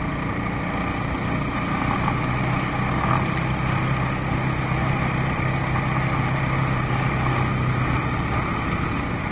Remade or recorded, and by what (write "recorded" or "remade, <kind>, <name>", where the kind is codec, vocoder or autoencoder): recorded